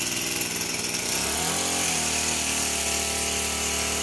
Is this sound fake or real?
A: real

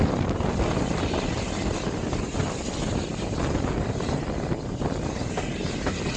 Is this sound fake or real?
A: real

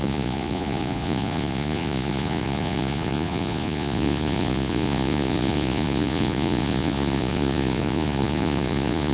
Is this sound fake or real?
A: fake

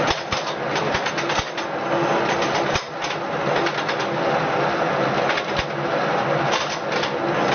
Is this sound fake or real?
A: real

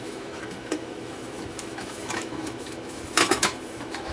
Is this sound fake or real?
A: fake